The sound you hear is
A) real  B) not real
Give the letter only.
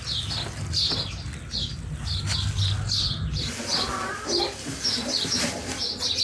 A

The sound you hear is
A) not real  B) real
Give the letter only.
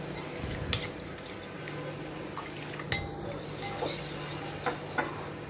B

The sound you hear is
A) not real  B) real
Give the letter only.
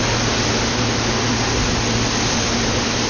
B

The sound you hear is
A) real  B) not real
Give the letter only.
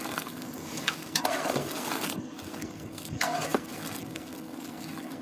B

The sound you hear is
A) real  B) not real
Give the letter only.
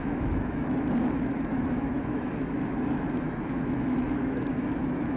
B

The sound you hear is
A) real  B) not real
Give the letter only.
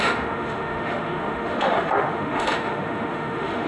B